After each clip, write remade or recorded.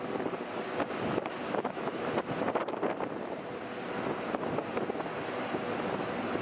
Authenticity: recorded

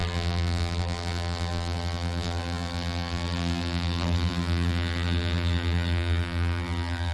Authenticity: remade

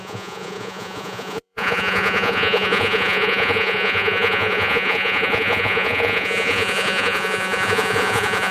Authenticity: remade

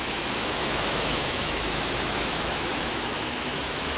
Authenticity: remade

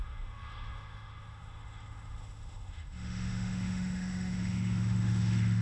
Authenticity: remade